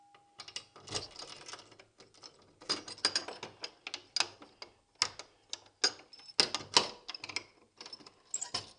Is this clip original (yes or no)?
yes